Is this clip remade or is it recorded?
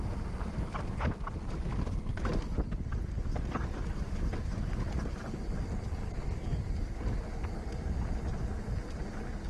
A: recorded